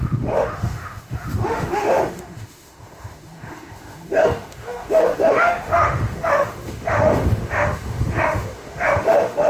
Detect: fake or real fake